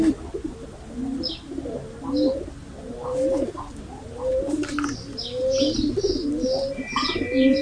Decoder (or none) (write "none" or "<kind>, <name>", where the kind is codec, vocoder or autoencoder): none